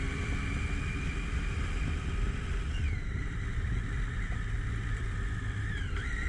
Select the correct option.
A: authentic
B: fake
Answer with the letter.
B